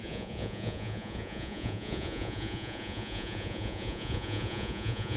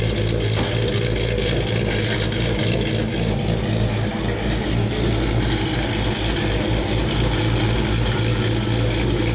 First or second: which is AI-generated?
first